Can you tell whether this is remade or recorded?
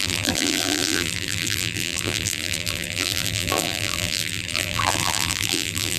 remade